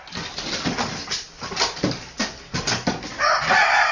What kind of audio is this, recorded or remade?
recorded